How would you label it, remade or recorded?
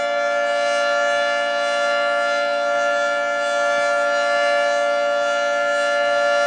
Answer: recorded